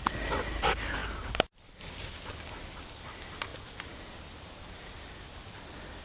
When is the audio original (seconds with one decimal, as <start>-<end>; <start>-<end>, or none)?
0.0-6.0